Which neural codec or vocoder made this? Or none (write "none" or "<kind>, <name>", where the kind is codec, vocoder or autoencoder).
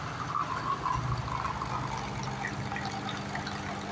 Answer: none